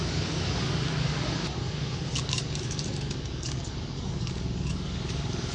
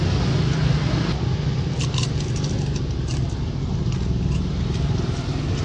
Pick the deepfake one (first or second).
first